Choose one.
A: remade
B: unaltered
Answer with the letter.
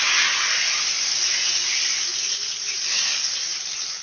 B